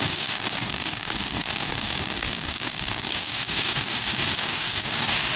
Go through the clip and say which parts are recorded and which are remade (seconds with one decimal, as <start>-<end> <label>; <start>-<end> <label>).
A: 0.0-5.4 remade